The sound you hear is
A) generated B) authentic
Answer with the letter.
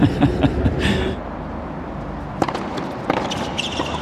B